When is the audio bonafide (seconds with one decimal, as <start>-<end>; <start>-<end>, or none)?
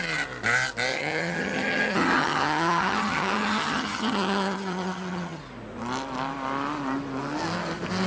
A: 0.0-0.9; 5.4-8.1